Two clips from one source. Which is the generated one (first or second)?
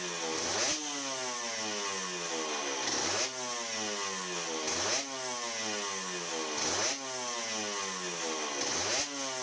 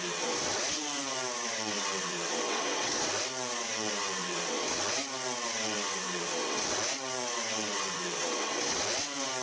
second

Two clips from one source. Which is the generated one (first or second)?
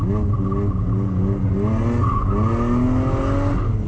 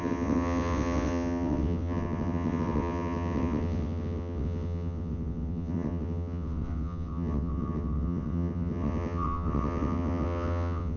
second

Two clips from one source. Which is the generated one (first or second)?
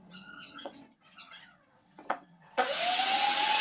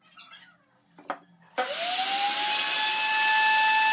first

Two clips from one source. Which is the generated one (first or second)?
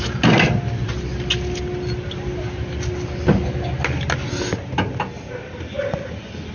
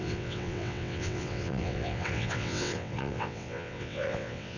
second